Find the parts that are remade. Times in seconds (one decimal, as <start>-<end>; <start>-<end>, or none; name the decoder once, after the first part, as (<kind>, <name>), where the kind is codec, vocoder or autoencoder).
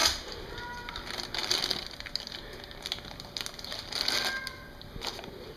none